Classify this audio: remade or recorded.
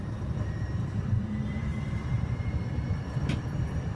remade